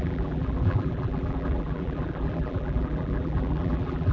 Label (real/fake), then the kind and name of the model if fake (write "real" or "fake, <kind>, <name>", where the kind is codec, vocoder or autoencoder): fake, vocoder, BigVGAN v2